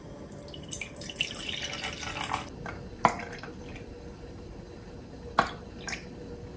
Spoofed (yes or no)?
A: no